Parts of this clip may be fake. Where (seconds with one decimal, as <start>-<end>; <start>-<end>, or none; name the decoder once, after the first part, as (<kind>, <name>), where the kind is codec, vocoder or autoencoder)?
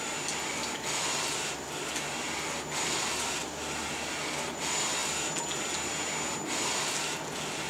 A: none